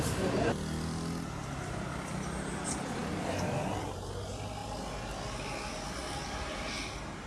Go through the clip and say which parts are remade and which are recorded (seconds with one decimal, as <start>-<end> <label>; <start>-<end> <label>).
0.0-7.3 recorded